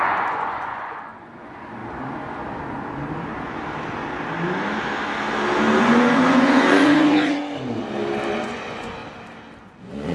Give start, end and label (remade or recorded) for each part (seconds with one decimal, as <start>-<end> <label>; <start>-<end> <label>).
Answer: 0.0-1.8 remade; 1.8-5.8 recorded; 5.8-7.4 remade; 7.4-8.4 recorded; 8.4-9.0 remade; 9.0-9.6 recorded; 9.6-10.1 remade